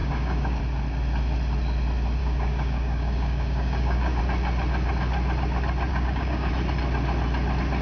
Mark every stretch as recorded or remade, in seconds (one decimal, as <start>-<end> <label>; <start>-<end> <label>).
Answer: 0.0-0.6 remade; 0.6-2.2 recorded; 2.2-4.2 remade; 4.2-5.9 recorded; 5.9-6.5 remade; 6.5-7.8 recorded

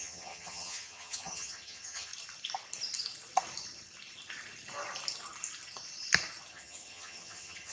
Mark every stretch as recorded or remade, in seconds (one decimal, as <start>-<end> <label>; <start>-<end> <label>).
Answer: 0.0-2.1 remade; 2.1-6.5 recorded; 6.5-7.7 remade

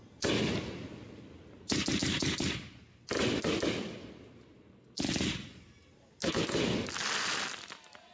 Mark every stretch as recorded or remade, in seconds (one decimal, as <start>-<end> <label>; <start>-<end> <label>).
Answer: 0.0-8.1 recorded

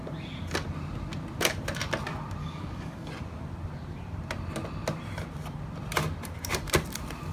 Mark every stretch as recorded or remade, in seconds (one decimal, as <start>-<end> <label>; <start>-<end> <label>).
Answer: 0.0-2.4 recorded; 2.4-3.1 remade; 3.1-7.3 recorded

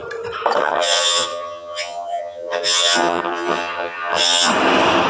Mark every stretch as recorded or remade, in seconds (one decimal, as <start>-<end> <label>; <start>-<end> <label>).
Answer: 0.0-0.6 recorded; 0.6-4.5 remade; 4.5-5.1 recorded

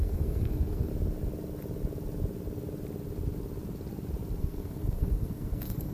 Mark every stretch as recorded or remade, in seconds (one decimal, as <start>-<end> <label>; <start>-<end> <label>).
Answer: 0.0-0.9 remade; 0.9-4.4 recorded; 4.4-5.9 remade